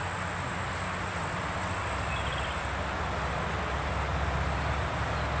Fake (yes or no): no